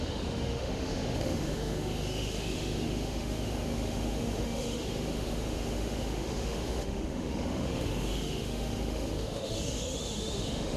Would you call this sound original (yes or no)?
no